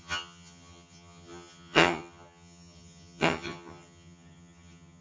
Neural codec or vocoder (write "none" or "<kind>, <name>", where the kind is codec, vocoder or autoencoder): vocoder, HiFi-GAN